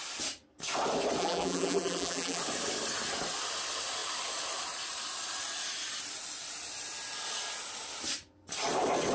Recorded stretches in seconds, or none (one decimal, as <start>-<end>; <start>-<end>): 0.0-1.2; 2.4-9.1

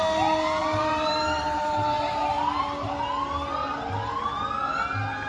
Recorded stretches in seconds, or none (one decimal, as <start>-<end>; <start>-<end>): 0.0-0.6; 2.9-3.6; 4.2-5.3

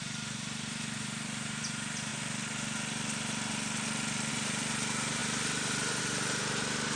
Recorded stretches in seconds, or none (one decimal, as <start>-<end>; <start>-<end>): 2.1-4.3

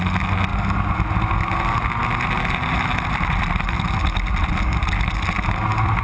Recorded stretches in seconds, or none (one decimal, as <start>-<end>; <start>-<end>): 0.0-6.0

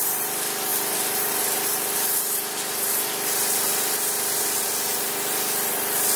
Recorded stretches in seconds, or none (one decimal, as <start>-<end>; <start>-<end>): none

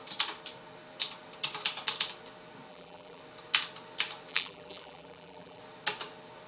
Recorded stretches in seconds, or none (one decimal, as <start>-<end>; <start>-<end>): 0.0-2.7; 3.2-4.3; 5.6-6.5

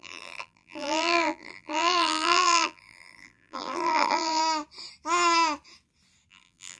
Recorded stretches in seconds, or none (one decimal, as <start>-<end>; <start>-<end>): 4.4-6.3